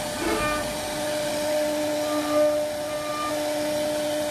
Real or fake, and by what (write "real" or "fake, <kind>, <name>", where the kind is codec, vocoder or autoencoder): real